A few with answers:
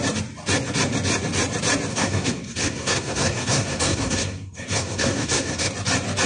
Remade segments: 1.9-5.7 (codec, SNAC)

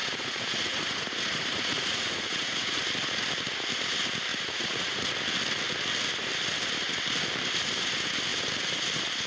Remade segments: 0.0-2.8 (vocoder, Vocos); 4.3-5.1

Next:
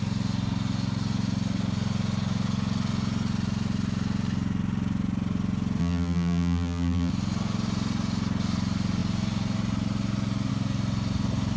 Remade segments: 5.8-7.1 (vocoder, BigVGAN v2)

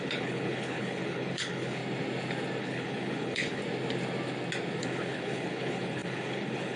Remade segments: 0.0-1.8 (codec, HILCodec); 2.6-3.6; 4.8-6.8